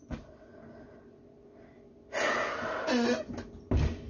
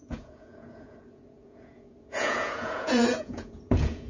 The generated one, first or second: second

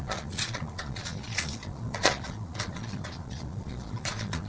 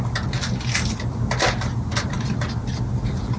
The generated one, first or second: first